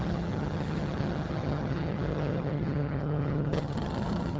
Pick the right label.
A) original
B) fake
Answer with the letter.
B